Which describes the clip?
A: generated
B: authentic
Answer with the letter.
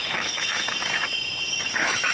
A